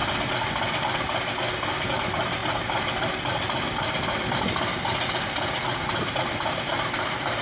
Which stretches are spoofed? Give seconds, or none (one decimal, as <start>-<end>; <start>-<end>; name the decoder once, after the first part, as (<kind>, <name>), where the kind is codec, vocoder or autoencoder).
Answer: 1.9-2.4 (vocoder, BigVGAN v2); 6.1-7.4